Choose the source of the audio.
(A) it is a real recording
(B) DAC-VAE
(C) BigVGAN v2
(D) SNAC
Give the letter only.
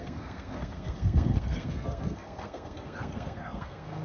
D